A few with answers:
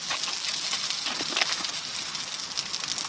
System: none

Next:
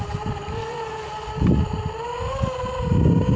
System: none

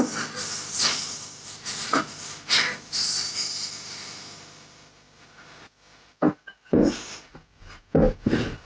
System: none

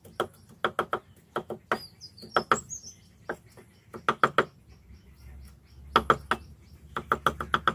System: none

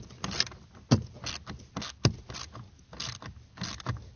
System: none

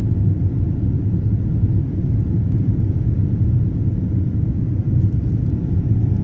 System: none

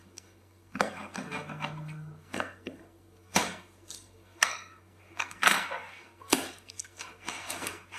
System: codec, SNAC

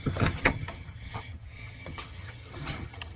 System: vocoder, HiFi-GAN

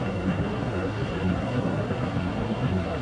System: codec, SNAC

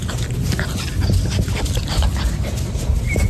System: none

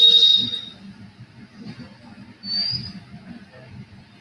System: none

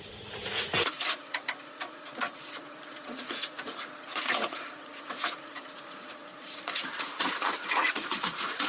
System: vocoder, Vocos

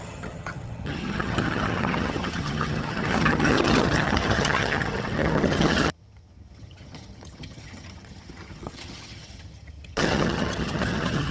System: vocoder, HiFi-GAN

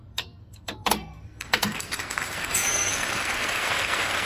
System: codec, SNAC